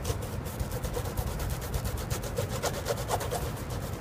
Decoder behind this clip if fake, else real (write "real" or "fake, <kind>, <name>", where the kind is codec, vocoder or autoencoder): real